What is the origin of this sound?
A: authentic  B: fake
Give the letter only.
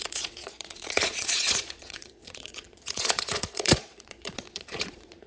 B